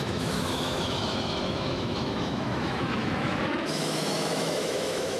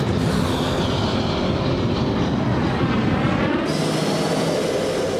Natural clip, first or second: second